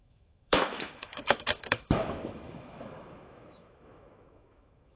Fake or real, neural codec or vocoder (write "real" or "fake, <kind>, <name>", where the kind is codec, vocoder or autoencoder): fake, autoencoder, DAC-VAE